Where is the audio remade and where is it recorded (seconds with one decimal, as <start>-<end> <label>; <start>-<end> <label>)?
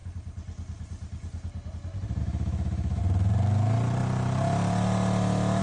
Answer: 0.0-2.2 recorded; 2.2-3.0 remade; 3.0-5.6 recorded